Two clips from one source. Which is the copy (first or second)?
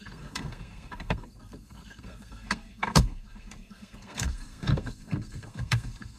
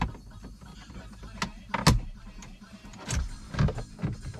first